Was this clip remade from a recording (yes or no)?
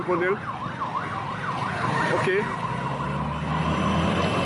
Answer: no